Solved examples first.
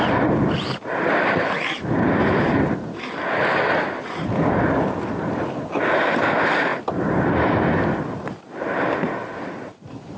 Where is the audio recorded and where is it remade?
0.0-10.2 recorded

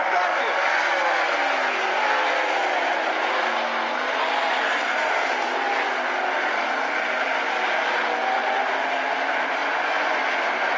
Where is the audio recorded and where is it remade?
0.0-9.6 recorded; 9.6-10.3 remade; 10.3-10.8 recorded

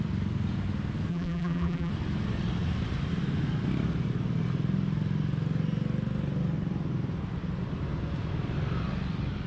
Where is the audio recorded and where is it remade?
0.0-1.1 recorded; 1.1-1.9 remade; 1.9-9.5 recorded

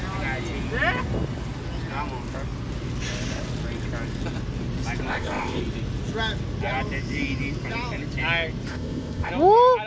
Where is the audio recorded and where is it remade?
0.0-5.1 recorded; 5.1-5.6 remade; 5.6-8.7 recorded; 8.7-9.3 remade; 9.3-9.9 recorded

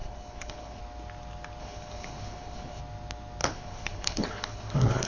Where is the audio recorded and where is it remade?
0.0-0.8 remade; 0.8-1.6 recorded; 1.6-2.8 remade; 2.8-3.4 recorded; 3.4-5.1 remade

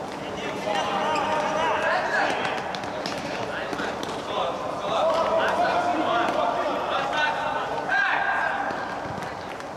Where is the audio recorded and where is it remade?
0.0-9.8 recorded

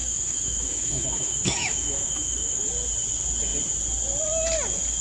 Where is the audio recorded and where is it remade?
0.0-2.7 remade; 2.7-5.0 recorded